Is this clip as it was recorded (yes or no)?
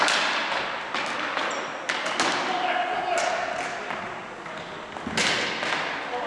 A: yes